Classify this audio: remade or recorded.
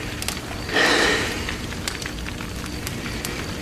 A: recorded